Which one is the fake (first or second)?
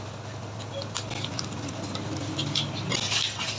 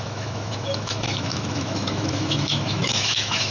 second